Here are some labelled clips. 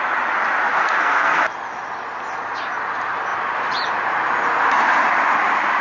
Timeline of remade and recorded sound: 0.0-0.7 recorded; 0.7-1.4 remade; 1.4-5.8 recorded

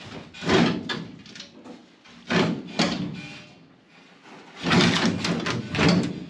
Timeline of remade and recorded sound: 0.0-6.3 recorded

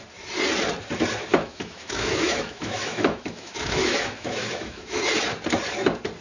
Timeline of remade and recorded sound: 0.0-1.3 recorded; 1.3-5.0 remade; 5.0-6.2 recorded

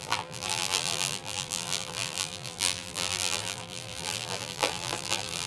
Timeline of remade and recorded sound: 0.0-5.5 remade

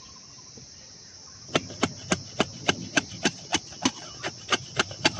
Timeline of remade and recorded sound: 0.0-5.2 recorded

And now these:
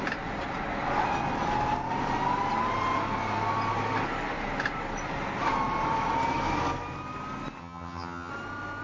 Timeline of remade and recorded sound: 0.0-7.6 recorded; 7.6-8.3 remade; 8.3-8.8 recorded